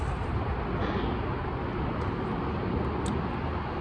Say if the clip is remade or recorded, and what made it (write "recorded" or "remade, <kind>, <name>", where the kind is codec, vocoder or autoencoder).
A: recorded